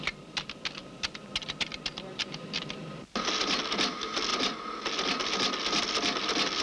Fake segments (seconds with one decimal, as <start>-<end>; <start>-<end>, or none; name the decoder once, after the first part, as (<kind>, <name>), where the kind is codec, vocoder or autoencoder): none